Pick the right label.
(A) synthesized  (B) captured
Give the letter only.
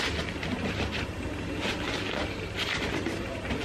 B